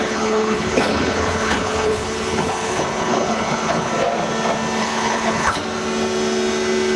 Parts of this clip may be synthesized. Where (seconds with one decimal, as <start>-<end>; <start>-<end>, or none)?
0.0-3.9; 4.8-5.6